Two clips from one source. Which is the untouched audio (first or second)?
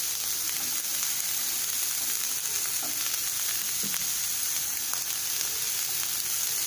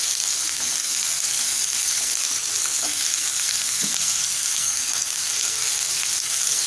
first